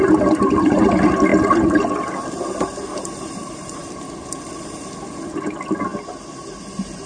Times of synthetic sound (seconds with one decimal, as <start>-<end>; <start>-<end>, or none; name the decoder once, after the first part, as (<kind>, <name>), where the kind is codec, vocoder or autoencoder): 1.3-4.5 (vocoder, BigVGAN v2)